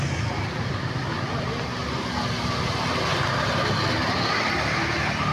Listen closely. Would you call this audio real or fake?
real